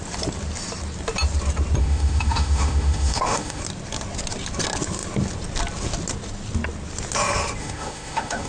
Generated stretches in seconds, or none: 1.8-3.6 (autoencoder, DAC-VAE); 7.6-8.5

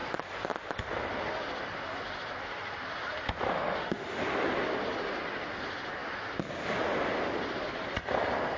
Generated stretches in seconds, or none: 3.5-4.2 (autoencoder, DAC-VAE)